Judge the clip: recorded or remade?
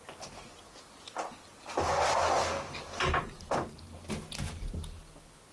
recorded